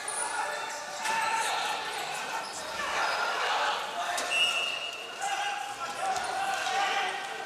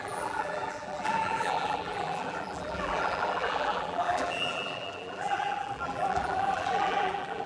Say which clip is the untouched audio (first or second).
first